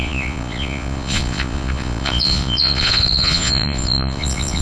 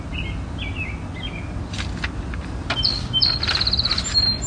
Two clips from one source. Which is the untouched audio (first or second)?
second